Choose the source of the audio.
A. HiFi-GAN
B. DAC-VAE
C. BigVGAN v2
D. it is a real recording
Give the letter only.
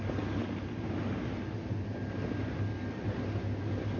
D